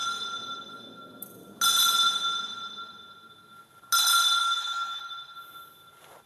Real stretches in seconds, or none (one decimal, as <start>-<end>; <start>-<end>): 0.0-4.4; 5.0-6.3